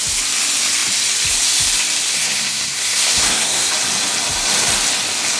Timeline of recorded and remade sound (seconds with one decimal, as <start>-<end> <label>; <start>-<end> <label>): 0.0-2.1 recorded; 2.1-3.7 remade; 3.7-5.4 recorded